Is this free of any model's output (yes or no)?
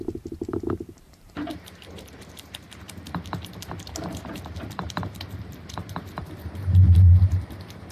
no